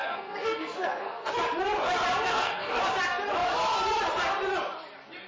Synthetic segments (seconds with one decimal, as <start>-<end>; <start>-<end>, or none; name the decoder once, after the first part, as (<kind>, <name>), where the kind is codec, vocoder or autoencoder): 0.0-1.3 (codec, SNAC); 2.3-2.8